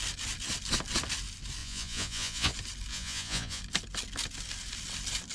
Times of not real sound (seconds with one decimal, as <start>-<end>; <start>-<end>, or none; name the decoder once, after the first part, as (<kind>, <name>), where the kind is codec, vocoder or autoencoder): 1.6-2.5 (vocoder, Vocos); 2.9-3.6